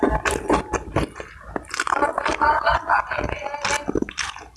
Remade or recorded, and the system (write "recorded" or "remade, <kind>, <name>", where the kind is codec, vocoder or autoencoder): recorded